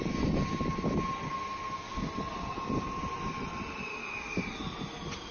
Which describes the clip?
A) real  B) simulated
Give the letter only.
A